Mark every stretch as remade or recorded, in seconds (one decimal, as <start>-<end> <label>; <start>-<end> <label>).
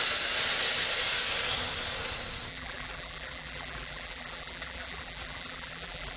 0.0-2.5 recorded; 2.5-6.2 remade